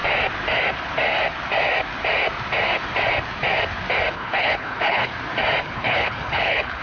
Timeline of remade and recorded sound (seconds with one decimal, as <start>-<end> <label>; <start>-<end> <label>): 0.0-4.1 recorded; 4.1-5.1 remade; 5.1-5.6 recorded; 5.6-6.8 remade